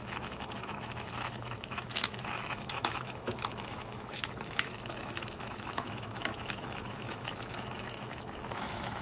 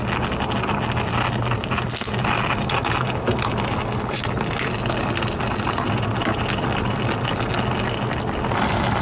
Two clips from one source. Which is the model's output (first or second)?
first